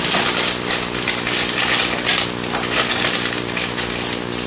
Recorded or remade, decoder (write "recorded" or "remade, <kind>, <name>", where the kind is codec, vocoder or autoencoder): recorded